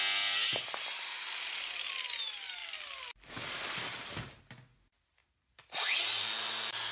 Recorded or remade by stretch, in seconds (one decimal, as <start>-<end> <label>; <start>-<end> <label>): 0.0-2.6 recorded; 2.6-4.4 remade; 4.4-6.9 recorded